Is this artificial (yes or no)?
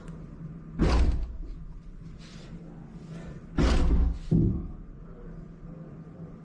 no